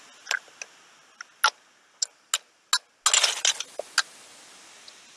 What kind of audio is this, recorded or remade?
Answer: recorded